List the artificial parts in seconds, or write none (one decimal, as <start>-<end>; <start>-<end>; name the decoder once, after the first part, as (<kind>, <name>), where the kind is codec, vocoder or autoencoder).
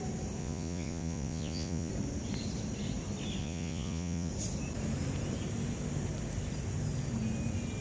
0.4-1.9 (vocoder, Vocos); 3.4-4.3